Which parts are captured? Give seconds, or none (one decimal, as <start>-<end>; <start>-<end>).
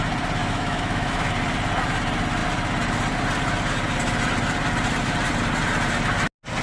0.0-0.4; 1.3-6.6